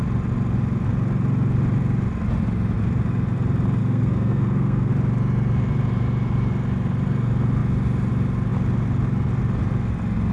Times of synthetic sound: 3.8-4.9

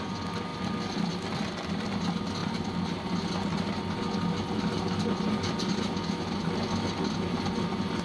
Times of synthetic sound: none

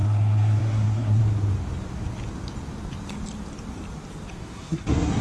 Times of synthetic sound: 0.0-1.2; 4.3-5.2